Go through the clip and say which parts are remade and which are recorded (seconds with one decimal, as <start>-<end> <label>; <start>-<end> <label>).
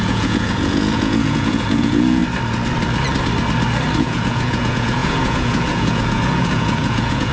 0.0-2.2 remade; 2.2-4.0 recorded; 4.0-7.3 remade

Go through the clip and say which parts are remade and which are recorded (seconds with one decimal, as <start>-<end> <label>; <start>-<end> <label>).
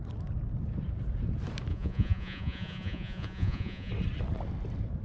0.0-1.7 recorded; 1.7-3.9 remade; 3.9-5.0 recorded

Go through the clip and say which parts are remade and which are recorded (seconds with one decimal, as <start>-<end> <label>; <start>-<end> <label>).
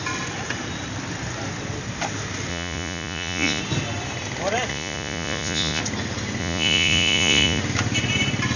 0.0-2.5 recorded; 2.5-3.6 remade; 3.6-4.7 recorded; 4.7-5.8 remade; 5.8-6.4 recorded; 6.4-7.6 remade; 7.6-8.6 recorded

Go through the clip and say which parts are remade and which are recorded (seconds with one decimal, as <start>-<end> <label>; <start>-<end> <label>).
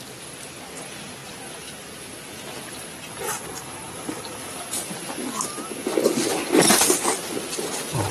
0.0-8.1 recorded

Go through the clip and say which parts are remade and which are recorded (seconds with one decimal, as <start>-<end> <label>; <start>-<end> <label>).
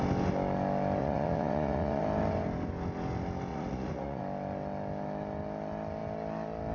0.0-1.0 recorded; 1.0-2.0 remade; 2.0-3.5 recorded; 3.5-4.2 remade; 4.2-6.7 recorded